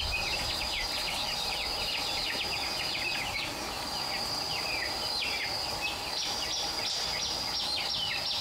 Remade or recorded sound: recorded